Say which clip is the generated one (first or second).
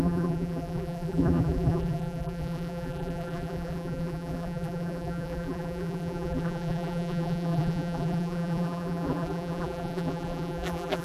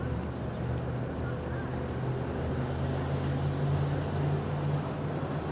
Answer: first